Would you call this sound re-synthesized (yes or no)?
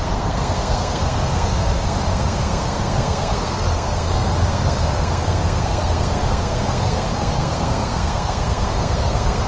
yes